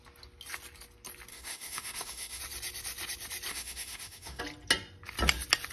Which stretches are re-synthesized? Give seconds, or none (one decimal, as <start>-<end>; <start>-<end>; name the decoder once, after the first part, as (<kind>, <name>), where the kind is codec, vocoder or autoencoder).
1.3-2.4 (autoencoder, DAC-VAE); 3.5-4.4